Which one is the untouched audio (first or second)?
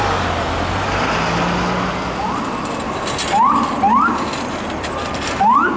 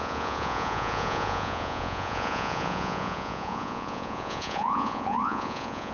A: first